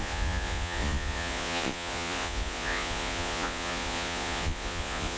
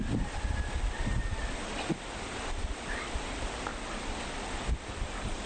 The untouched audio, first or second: second